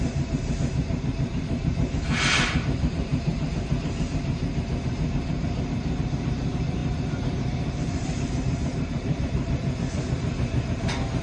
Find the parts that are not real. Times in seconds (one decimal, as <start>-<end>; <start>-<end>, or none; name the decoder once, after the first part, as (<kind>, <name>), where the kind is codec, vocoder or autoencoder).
0.0-11.2 (vocoder, BigVGAN v2)